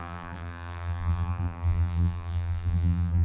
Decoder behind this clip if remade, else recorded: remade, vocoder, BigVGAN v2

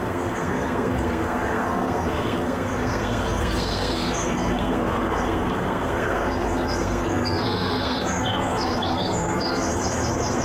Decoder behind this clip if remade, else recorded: remade, codec, SNAC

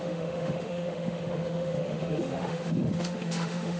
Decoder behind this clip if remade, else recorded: remade, autoencoder, DAC-VAE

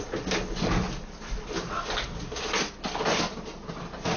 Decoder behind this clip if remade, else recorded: recorded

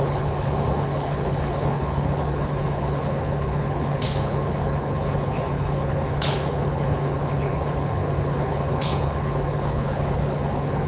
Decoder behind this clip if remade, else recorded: remade, codec, HILCodec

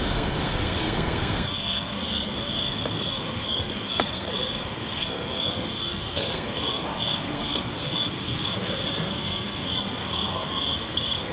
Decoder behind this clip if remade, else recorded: remade, codec, SNAC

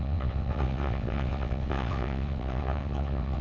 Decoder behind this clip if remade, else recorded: remade, vocoder, WaveNeXt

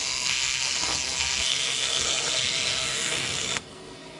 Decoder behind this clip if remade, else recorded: remade, codec, SNAC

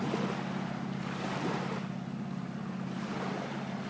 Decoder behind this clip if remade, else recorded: recorded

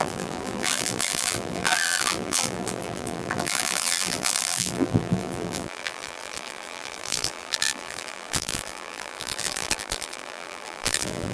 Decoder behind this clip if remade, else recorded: remade, vocoder, BigVGAN v2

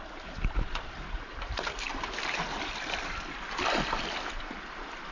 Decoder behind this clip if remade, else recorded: remade, vocoder, BigVGAN v2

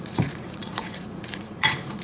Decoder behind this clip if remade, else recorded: remade, vocoder, Vocos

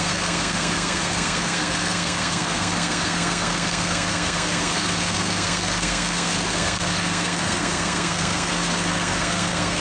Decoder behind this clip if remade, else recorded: remade, codec, SNAC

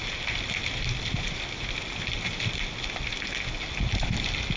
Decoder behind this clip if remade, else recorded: recorded